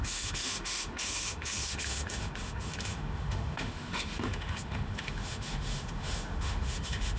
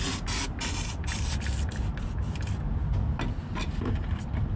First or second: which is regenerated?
first